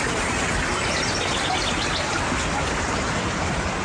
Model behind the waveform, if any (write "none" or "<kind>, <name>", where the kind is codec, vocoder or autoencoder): none